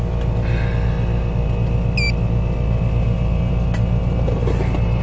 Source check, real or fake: real